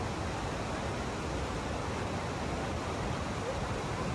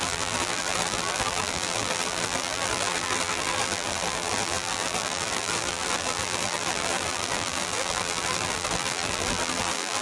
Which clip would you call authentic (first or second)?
first